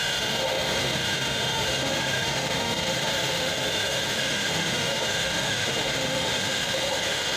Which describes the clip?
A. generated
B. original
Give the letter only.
A